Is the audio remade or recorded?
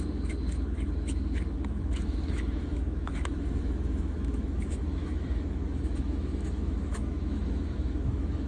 remade